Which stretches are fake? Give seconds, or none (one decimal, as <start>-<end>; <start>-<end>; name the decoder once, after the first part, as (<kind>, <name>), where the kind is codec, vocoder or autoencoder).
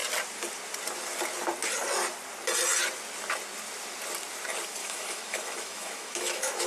4.8-6.7 (autoencoder, DAC-VAE)